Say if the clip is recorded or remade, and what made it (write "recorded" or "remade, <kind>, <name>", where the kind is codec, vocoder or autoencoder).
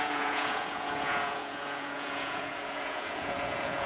remade, vocoder, Vocos